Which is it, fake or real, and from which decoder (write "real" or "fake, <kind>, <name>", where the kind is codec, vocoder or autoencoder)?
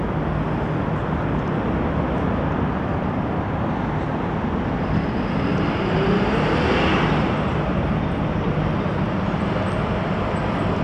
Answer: real